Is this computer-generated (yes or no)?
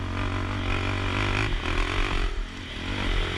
no